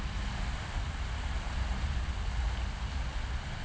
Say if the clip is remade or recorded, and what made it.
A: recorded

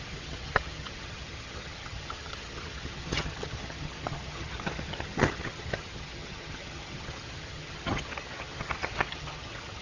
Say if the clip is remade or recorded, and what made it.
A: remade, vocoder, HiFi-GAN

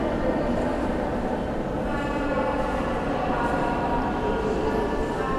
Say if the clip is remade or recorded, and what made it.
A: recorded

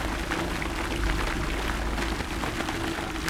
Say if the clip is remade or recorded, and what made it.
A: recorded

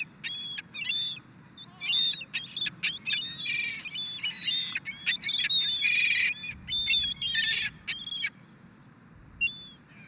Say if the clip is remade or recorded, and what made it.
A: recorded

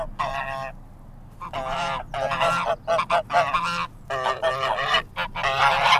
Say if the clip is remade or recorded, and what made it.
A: recorded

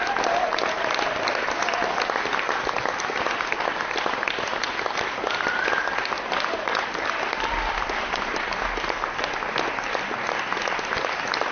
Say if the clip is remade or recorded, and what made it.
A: recorded